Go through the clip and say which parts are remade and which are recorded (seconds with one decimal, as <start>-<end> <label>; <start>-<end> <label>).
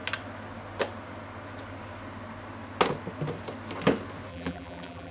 0.0-4.3 recorded; 4.3-5.1 remade